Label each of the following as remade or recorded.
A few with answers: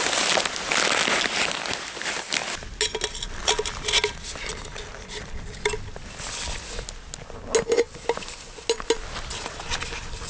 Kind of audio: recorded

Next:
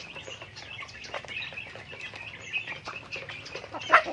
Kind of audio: recorded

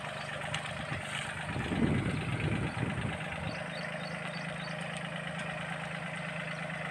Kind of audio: recorded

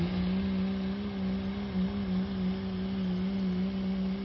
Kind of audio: recorded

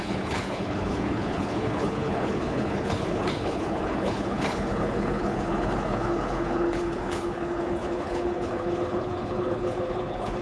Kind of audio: remade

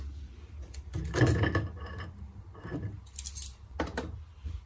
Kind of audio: recorded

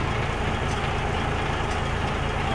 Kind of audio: recorded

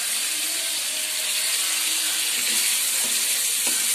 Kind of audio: recorded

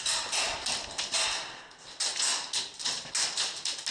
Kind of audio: recorded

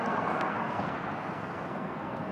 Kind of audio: remade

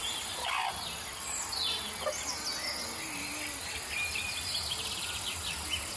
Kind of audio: recorded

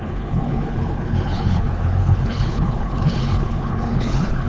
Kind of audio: remade